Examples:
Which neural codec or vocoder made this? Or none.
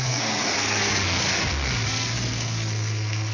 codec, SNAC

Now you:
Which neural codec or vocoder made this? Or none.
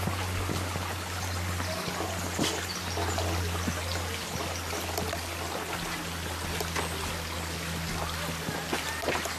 none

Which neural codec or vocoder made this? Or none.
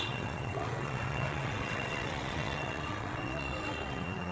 vocoder, WaveNeXt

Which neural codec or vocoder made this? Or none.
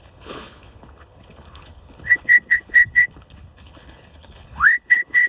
codec, HILCodec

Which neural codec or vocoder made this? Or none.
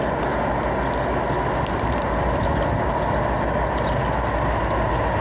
none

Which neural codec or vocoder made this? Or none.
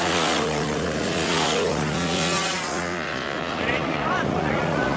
vocoder, Vocos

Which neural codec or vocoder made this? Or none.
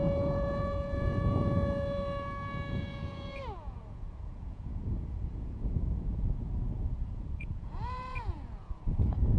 vocoder, Vocos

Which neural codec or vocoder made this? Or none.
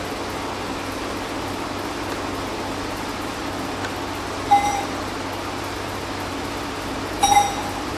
none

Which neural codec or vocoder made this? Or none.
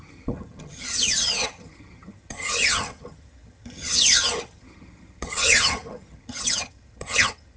vocoder, HiFi-GAN